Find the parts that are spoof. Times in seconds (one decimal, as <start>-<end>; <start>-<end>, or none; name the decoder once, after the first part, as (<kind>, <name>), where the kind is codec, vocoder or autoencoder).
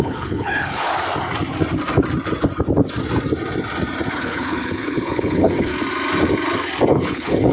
0.0-0.9 (codec, HILCodec); 4.1-5.7; 6.9-7.5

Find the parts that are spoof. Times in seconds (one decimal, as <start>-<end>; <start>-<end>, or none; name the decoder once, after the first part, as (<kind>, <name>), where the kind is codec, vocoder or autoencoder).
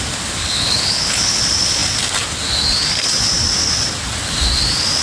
0.4-1.4 (codec, HILCodec)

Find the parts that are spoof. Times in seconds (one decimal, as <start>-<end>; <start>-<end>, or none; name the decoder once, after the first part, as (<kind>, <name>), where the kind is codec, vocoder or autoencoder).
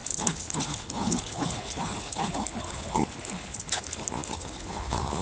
0.0-5.2 (codec, HILCodec)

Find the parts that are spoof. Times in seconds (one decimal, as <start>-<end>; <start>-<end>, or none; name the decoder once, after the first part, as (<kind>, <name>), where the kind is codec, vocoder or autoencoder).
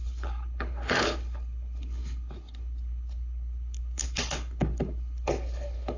0.0-6.0 (codec, HILCodec)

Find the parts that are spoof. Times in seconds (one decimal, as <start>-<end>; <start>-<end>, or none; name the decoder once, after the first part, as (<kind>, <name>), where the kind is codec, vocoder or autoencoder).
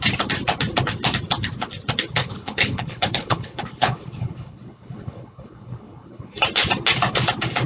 2.2-6.3 (codec, HILCodec)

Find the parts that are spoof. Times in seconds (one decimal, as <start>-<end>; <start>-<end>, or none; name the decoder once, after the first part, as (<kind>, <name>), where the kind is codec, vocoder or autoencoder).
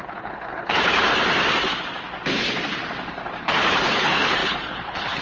0.0-1.1 (codec, HILCodec); 3.4-5.2